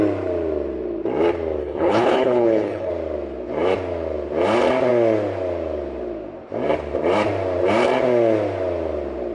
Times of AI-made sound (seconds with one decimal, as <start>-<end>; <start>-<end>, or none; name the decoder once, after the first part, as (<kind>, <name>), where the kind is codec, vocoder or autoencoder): 1.6-2.9 (codec, HILCodec)

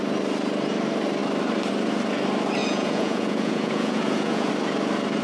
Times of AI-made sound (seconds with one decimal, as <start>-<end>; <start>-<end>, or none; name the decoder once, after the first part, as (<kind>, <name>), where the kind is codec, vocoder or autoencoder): 2.6-4.5 (vocoder, Vocos)

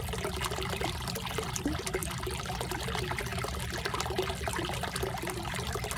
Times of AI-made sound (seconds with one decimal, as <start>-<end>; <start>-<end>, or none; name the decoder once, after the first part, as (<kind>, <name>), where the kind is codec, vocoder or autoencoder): none

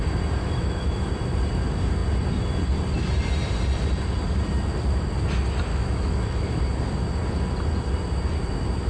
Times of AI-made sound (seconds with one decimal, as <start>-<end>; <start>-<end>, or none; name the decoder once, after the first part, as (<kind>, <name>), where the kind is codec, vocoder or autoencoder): 0.4-1.1 (autoencoder, DAC-VAE); 5.7-6.6